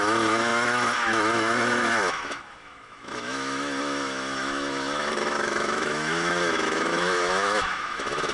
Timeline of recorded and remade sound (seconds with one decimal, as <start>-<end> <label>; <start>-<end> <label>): 0.0-8.3 remade